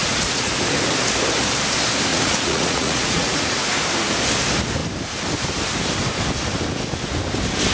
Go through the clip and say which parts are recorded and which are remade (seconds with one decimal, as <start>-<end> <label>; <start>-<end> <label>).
0.0-0.5 remade; 0.5-2.1 recorded; 2.1-3.8 remade; 3.8-7.7 recorded